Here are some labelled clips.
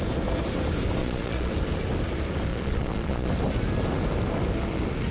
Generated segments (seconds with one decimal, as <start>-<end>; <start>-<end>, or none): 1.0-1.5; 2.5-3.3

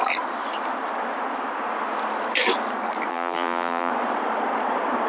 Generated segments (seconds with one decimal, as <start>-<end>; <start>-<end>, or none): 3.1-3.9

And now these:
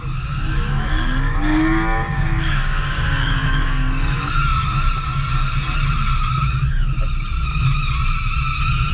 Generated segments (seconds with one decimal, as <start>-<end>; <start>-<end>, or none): 0.0-3.8